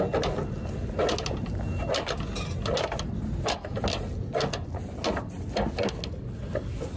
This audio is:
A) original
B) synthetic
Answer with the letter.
A